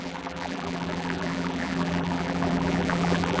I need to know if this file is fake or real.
fake